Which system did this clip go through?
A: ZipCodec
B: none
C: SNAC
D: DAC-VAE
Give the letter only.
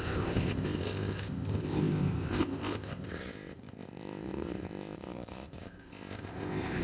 A